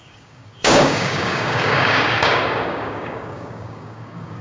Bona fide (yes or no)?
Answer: no